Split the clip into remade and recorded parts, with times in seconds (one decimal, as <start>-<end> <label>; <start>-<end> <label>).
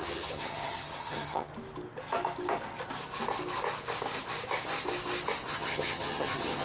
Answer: 0.0-1.5 remade; 1.5-5.5 recorded; 5.5-6.6 remade